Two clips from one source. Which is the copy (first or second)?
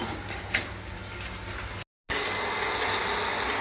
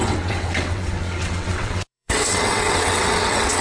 second